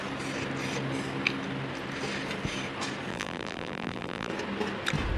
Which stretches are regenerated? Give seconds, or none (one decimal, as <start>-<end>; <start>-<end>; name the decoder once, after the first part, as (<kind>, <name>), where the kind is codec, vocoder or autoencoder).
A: 3.1-4.3 (vocoder, BigVGAN v2)